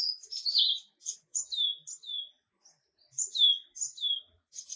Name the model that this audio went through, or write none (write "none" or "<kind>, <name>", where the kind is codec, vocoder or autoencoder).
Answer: none